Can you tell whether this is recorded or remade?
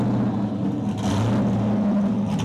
recorded